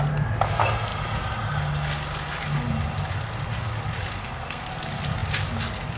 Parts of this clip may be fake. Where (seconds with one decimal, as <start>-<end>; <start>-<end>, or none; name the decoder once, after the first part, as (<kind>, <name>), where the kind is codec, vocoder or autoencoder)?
4.2-4.7 (codec, SNAC)